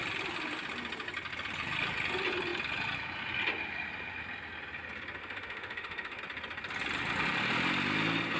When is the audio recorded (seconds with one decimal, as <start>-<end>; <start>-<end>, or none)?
0.0-5.2; 6.2-8.4

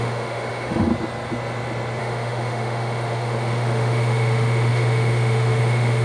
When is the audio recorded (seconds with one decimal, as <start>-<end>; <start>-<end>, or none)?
0.9-2.0